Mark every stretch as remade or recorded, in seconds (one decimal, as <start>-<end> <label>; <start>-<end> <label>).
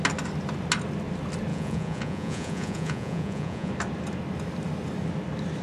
0.0-1.5 recorded; 1.5-3.7 remade; 3.7-5.6 recorded